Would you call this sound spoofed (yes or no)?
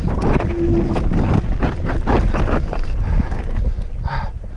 no